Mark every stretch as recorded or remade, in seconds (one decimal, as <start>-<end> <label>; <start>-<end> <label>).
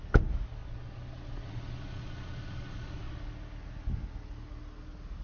0.0-0.6 recorded; 0.6-3.2 remade; 3.2-5.2 recorded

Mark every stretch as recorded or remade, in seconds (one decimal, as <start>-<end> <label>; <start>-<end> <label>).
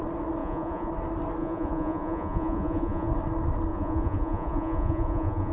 0.0-0.4 recorded; 0.4-0.9 remade; 0.9-1.4 recorded; 1.4-3.1 remade; 3.1-3.7 recorded; 3.7-5.5 remade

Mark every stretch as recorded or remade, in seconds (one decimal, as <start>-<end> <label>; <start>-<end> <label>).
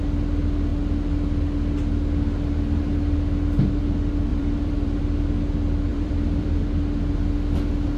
0.0-4.3 recorded; 4.3-5.0 remade; 5.0-5.9 recorded; 5.9-6.6 remade; 6.6-8.0 recorded